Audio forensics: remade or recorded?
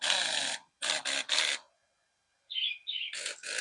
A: recorded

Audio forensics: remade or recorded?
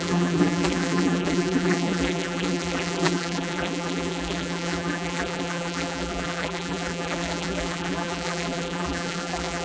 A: remade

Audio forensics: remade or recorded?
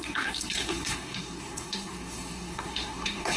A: remade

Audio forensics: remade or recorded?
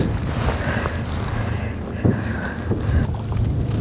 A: recorded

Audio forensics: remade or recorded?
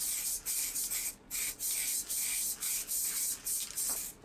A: recorded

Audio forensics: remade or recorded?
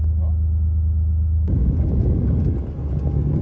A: recorded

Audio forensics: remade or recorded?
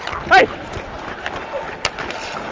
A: recorded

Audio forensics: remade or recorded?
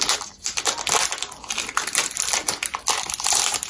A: recorded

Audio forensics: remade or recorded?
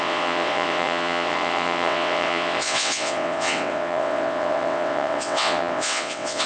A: remade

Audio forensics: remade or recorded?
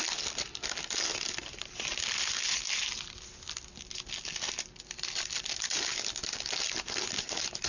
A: recorded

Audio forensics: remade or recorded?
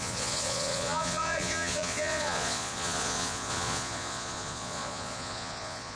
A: remade